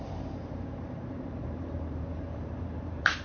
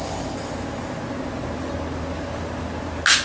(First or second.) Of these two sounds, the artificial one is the first